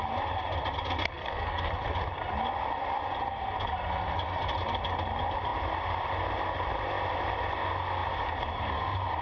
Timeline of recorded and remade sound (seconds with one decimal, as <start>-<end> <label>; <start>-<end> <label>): 0.0-1.1 recorded; 1.1-1.7 remade; 1.7-9.2 recorded